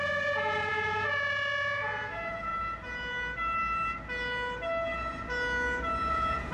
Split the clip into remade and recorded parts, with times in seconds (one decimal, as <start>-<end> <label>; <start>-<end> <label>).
0.0-2.5 remade; 2.5-6.1 recorded; 6.1-6.5 remade